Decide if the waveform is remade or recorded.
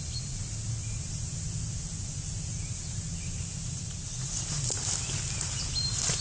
recorded